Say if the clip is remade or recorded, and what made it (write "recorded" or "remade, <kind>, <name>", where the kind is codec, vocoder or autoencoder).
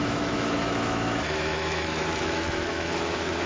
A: remade, autoencoder, DAC-VAE